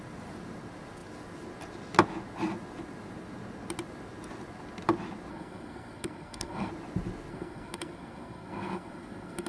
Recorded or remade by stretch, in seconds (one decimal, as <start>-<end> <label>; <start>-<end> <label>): 0.0-5.3 recorded; 5.3-6.7 remade; 6.7-7.3 recorded; 7.3-9.5 remade